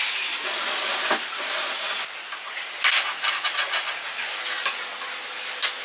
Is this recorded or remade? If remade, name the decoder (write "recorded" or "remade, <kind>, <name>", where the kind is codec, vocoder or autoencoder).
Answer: recorded